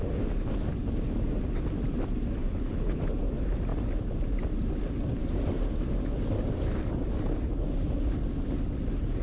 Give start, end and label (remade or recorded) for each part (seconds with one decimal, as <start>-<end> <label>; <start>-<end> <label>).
0.0-2.4 recorded; 2.4-3.0 remade; 3.0-9.2 recorded